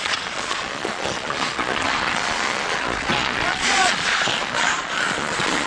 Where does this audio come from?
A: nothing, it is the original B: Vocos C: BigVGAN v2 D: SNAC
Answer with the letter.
B